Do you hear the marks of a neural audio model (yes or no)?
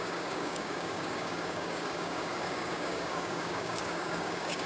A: yes